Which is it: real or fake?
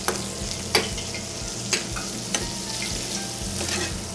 real